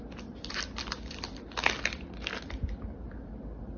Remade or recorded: recorded